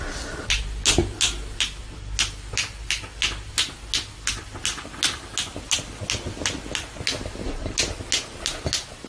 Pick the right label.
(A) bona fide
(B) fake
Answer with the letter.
A